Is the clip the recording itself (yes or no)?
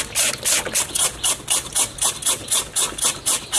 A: yes